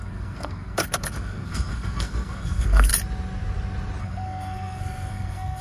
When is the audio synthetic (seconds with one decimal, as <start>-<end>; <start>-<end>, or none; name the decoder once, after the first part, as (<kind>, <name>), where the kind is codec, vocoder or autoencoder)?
0.0-2.9 (codec, SNAC); 4.0-5.6